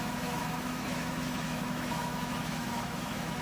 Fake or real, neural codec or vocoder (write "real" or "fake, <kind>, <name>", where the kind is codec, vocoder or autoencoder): fake, autoencoder, DAC-VAE